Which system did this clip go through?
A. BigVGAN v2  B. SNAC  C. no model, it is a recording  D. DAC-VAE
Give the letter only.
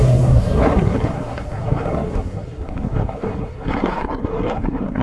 B